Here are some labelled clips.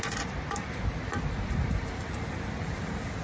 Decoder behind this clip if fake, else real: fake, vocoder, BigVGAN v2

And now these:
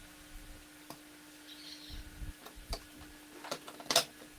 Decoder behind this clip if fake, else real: real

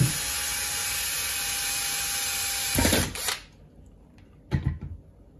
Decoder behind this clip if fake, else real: real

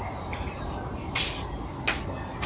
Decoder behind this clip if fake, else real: real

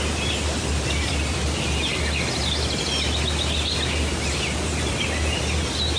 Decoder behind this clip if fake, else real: real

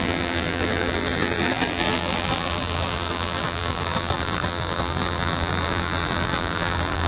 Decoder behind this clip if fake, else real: fake, vocoder, BigVGAN v2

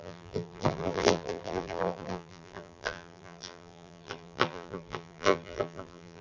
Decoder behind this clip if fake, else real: fake, vocoder, BigVGAN v2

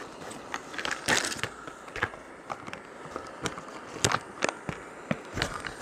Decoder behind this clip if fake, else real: real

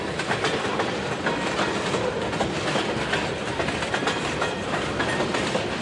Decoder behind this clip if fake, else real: fake, vocoder, BigVGAN v2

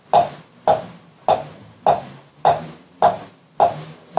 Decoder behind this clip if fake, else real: real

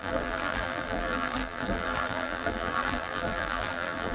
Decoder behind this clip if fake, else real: fake, vocoder, BigVGAN v2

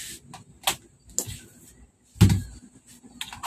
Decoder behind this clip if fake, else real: real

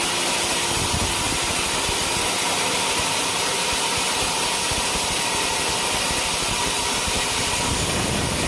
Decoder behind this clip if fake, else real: real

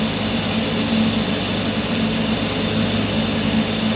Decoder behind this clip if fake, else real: real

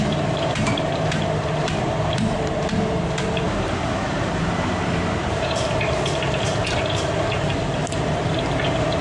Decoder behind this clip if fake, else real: fake, vocoder, BigVGAN v2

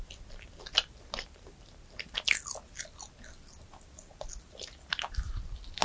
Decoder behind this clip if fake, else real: real